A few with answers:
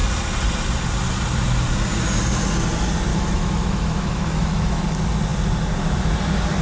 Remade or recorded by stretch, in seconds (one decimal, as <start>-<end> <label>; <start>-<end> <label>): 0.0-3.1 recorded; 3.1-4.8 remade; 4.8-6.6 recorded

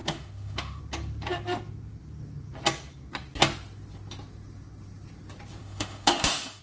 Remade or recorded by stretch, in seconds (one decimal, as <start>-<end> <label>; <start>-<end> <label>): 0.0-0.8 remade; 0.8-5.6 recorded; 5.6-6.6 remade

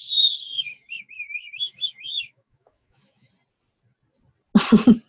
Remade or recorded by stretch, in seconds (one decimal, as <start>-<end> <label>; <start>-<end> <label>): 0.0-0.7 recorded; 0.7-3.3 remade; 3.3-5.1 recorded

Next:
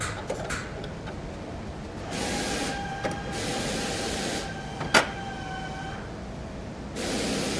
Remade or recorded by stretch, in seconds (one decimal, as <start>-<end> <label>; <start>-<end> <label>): 0.0-7.6 recorded

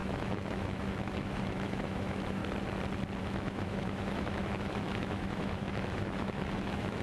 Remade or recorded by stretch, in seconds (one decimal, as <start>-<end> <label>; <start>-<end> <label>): 0.0-2.4 remade; 2.4-3.2 recorded; 3.2-7.0 remade

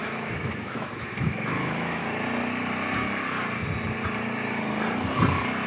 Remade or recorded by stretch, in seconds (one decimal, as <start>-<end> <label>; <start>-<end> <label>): 0.0-2.0 remade; 2.0-5.7 recorded

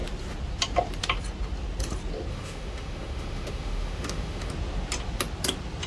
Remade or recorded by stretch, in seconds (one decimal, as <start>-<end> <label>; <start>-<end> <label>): 0.0-2.3 recorded; 2.3-4.5 remade; 4.5-5.9 recorded